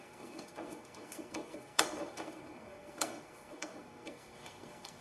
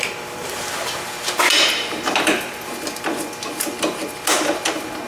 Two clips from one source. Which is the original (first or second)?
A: second